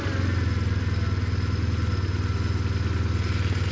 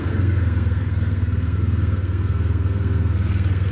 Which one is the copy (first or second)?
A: second